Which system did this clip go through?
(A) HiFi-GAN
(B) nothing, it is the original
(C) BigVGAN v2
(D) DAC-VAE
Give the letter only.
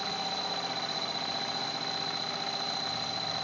B